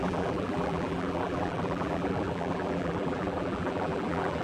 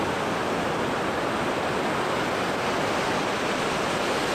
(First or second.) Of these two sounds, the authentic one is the second